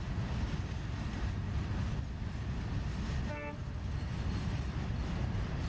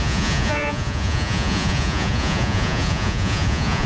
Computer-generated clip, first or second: second